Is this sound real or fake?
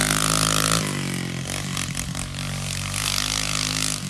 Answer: real